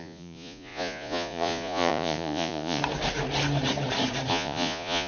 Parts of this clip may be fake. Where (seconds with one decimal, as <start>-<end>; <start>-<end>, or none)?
0.0-2.8; 4.3-5.1